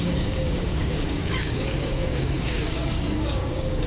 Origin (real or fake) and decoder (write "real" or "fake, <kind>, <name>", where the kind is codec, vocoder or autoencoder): fake, codec, DAC